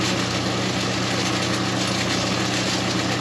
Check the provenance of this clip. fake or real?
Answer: real